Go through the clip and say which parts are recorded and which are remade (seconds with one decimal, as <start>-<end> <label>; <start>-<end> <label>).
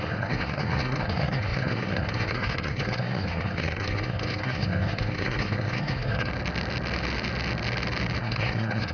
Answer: 0.0-6.3 remade; 6.3-8.2 recorded; 8.2-8.9 remade